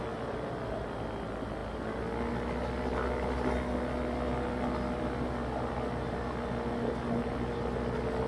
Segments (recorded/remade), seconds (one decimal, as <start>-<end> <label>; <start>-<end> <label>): 0.0-8.3 recorded